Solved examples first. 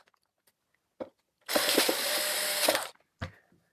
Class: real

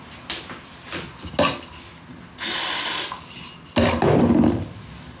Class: real